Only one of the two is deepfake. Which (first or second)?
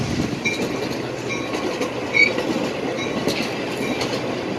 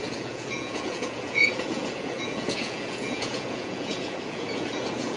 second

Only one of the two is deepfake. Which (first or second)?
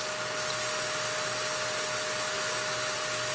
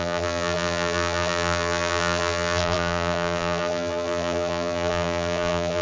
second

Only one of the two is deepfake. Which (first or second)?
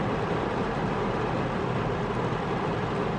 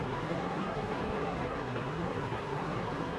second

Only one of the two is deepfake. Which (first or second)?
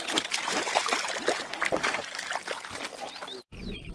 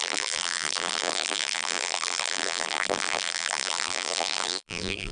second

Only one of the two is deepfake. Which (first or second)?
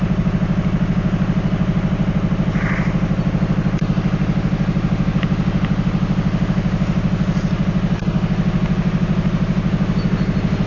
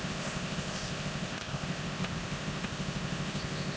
second